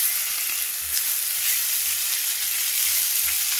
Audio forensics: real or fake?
real